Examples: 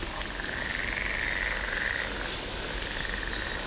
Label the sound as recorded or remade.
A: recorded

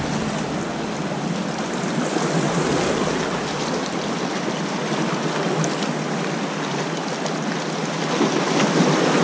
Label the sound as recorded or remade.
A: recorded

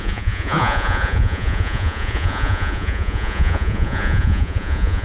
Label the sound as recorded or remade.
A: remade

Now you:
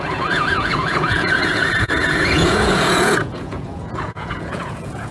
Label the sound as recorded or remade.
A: remade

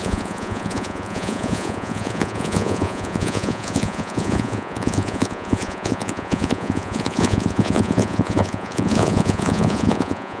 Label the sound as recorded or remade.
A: remade